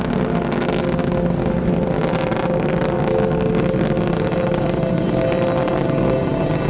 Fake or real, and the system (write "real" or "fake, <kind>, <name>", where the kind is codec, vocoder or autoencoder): real